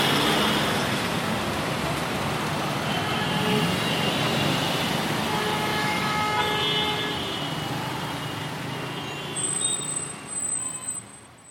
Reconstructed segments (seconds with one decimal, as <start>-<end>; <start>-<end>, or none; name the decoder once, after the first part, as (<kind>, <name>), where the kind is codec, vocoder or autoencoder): 5.7-6.4 (autoencoder, DAC-VAE)